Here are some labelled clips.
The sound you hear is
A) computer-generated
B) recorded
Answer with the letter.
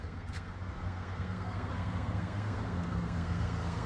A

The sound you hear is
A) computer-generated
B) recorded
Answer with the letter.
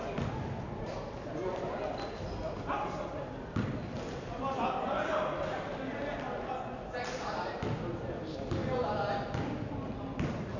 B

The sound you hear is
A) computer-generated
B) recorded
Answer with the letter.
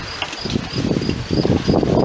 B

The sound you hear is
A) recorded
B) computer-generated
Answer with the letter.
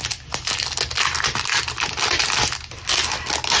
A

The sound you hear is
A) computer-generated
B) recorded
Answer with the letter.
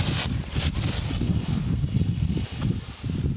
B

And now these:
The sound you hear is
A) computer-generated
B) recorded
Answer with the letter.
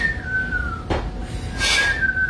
B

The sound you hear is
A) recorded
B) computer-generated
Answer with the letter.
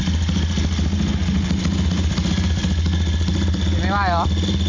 A